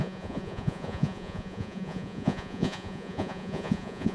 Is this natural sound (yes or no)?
no